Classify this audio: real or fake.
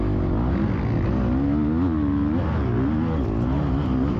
real